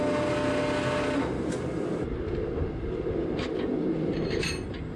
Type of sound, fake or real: real